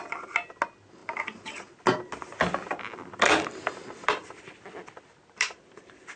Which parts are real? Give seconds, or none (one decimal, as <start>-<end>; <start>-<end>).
0.0-6.2